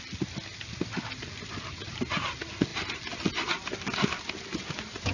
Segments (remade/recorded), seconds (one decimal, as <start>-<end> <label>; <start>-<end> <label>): 0.0-5.1 recorded